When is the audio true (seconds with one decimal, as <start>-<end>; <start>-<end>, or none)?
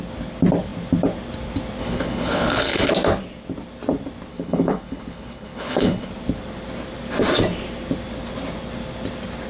0.0-1.8; 2.9-4.3; 6.1-9.5